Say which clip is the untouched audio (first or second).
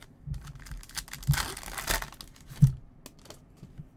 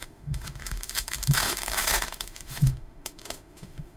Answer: first